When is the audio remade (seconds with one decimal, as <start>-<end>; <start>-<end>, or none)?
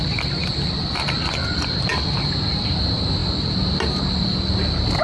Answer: 0.4-1.3